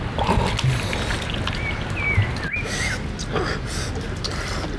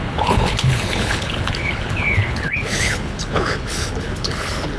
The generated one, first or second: second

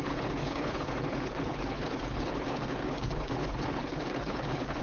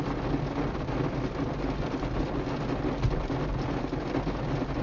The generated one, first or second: first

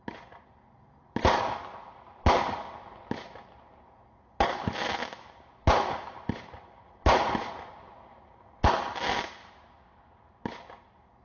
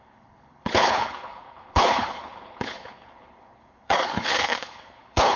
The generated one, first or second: second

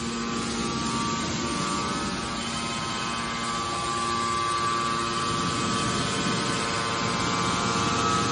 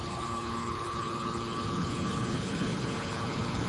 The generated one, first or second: second